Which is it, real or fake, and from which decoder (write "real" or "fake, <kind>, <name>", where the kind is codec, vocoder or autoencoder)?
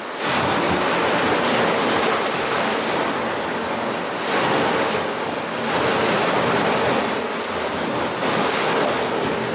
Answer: real